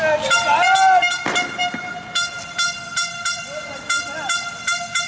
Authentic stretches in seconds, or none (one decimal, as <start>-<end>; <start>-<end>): 0.0-5.1